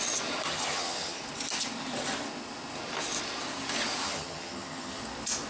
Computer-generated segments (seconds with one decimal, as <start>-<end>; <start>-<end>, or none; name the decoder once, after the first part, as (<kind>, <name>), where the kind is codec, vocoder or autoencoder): 0.5-1.2 (vocoder, HiFi-GAN); 4.0-5.0